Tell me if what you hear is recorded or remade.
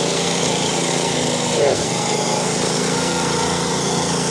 remade